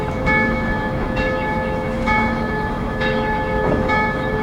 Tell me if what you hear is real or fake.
fake